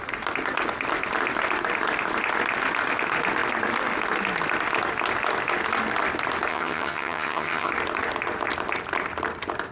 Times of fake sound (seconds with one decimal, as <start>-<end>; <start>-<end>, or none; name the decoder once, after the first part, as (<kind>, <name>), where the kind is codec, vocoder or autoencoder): 6.5-7.7 (vocoder, HiFi-GAN)